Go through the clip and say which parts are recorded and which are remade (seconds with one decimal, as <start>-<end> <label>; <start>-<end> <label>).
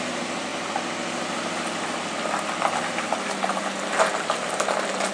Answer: 0.0-5.1 recorded